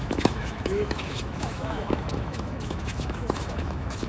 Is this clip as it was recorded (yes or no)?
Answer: no